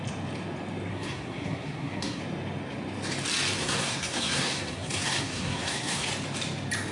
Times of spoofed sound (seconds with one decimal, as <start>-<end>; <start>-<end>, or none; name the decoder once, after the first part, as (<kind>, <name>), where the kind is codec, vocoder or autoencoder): 0.9-2.2 (codec, SNAC); 3.6-6.1